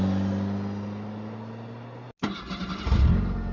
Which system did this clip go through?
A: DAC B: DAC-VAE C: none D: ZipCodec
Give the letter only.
C